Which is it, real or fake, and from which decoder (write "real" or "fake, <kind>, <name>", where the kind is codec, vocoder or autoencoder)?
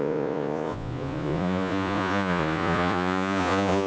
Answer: fake, vocoder, Vocos